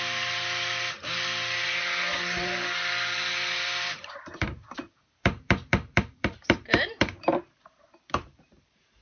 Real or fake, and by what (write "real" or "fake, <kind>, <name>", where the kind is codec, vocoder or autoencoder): fake, vocoder, BigVGAN v2